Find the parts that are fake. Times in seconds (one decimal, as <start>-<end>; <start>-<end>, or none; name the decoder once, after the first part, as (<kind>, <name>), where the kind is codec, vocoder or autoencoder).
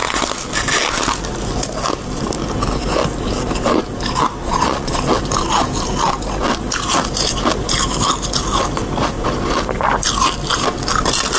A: 4.4-5.0 (vocoder, Vocos)